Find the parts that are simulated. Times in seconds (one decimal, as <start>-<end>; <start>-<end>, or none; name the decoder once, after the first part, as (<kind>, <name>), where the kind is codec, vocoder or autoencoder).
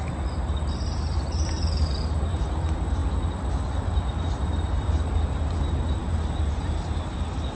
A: 0.0-3.0 (vocoder, BigVGAN v2); 3.5-7.5